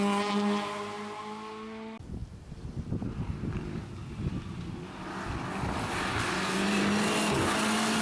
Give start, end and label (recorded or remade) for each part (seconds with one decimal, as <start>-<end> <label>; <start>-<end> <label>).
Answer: 0.0-8.0 recorded